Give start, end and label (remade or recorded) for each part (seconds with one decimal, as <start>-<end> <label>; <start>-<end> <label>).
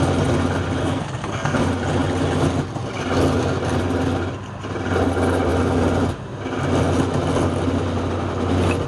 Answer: 0.0-0.8 recorded; 0.8-1.6 remade; 1.6-8.9 recorded